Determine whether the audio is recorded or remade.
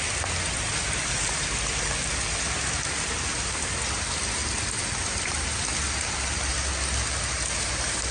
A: recorded